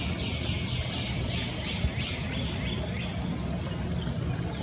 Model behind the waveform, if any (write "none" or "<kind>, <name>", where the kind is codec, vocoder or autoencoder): none